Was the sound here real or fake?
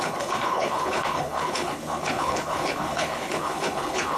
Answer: fake